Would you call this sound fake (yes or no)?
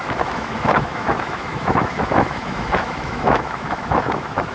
yes